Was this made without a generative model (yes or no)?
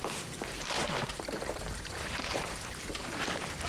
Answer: no